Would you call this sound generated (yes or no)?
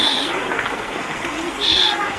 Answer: yes